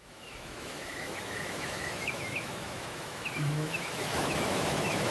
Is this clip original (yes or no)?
no